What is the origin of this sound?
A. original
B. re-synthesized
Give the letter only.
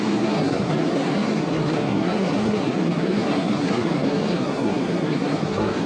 B